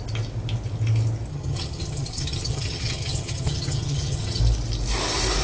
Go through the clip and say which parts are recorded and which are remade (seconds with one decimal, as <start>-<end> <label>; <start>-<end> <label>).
0.0-1.3 recorded; 1.3-4.4 remade; 4.4-5.4 recorded